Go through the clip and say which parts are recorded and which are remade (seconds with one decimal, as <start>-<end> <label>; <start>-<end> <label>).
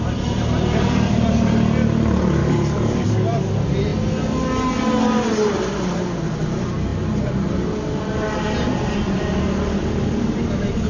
0.0-2.4 recorded; 2.4-3.5 remade; 3.5-10.9 recorded